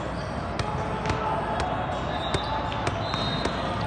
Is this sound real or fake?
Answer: real